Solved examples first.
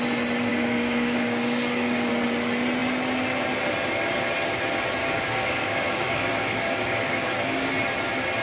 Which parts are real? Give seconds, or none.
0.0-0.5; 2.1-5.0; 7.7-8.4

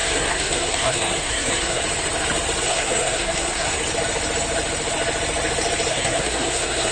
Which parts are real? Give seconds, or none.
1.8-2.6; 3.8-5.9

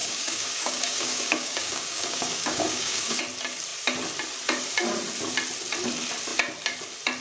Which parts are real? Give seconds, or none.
3.2-7.2

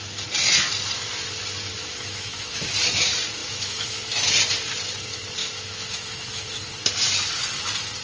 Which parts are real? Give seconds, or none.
0.0-1.7; 2.7-3.4; 4.3-5.4; 6.7-8.0

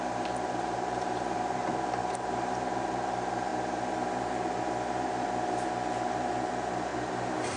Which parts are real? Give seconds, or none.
none

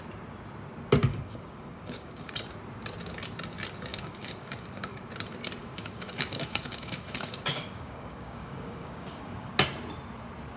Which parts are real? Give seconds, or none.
0.0-1.1; 2.3-3.9; 5.1-5.6; 9.5-10.6

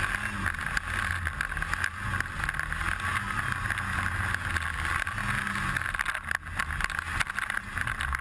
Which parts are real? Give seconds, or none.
0.0-8.2

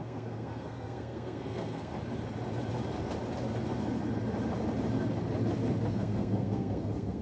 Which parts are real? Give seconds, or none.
1.9-5.9